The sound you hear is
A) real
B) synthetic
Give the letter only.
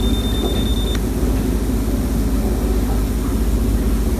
A